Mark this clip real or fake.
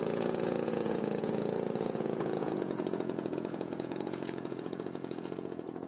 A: fake